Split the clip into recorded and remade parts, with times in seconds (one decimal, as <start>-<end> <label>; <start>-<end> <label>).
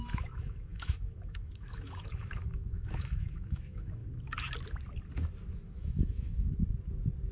0.0-4.0 remade; 4.0-5.5 recorded; 5.5-6.6 remade; 6.6-7.3 recorded